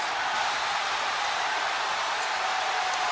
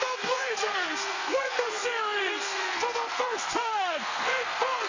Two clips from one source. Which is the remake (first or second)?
second